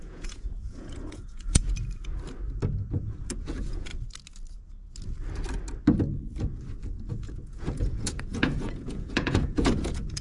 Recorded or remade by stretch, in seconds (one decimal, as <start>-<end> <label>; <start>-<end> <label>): 0.0-1.7 remade; 1.7-3.0 recorded; 3.0-3.9 remade; 3.9-7.1 recorded; 7.1-10.2 remade